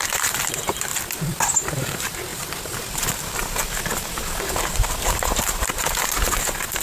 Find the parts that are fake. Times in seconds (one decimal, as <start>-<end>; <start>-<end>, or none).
0.0-0.9; 1.8-6.8